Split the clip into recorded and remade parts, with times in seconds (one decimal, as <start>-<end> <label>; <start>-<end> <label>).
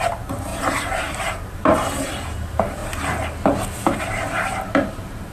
0.0-2.8 remade; 2.8-4.0 recorded; 4.0-5.3 remade